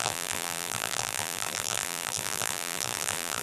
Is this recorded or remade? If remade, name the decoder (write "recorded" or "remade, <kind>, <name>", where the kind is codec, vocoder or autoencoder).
remade, vocoder, BigVGAN v2